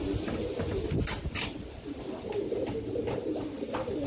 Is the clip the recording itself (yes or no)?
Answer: yes